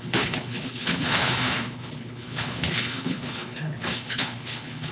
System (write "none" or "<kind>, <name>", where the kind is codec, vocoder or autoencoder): codec, HILCodec